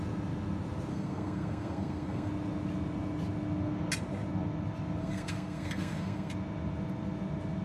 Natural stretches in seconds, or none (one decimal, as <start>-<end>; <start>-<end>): 0.0-0.9; 2.3-5.0; 6.3-7.6